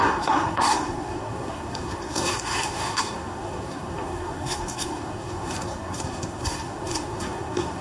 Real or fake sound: fake